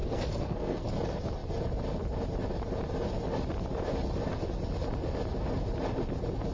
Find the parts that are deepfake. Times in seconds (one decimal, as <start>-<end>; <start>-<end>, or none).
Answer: 0.0-0.9